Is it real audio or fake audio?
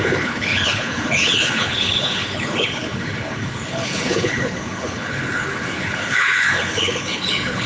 fake